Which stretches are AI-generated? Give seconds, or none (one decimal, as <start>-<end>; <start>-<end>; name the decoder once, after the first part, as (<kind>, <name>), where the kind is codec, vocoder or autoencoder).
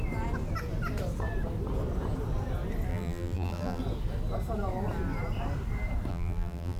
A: 2.9-3.8 (vocoder, BigVGAN v2); 6.1-6.8